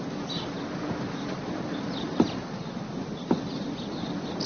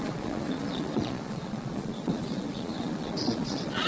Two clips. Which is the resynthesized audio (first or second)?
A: second